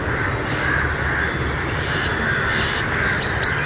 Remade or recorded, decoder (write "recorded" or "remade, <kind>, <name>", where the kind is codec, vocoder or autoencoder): recorded